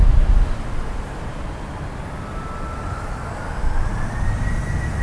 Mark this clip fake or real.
real